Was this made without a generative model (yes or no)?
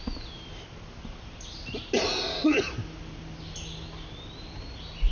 yes